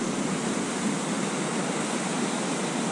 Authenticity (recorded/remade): recorded